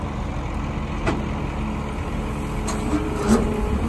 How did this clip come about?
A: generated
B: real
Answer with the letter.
B